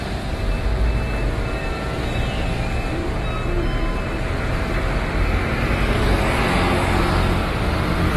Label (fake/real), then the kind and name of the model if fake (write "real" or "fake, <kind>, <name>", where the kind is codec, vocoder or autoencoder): real